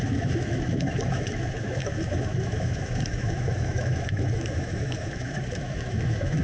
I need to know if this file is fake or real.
fake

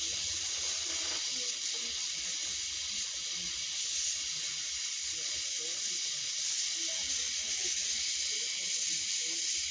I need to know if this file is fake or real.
real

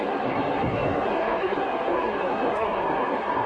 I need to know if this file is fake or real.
fake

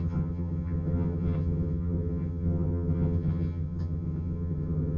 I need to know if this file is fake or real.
fake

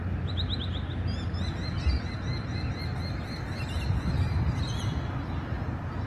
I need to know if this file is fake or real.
real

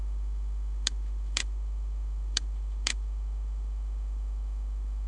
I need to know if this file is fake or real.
fake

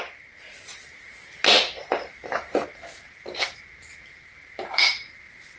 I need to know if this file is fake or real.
fake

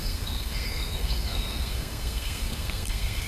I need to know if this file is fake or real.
fake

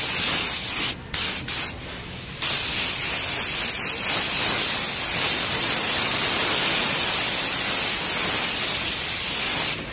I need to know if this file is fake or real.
real